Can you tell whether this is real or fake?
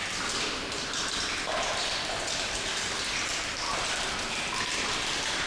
real